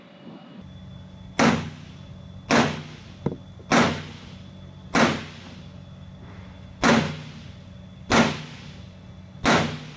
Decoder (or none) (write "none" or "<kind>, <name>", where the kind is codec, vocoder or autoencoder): none